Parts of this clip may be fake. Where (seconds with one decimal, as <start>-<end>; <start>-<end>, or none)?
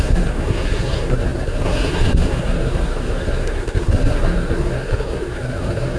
0.0-6.0